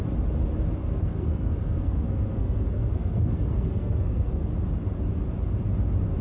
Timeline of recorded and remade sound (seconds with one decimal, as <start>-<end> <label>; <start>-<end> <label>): 0.0-0.8 recorded; 0.8-4.5 remade; 4.5-6.2 recorded